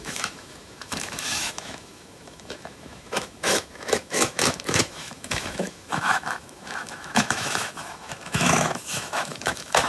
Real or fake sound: fake